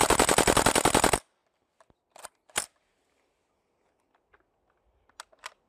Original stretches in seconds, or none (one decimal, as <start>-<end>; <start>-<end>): 0.0-5.7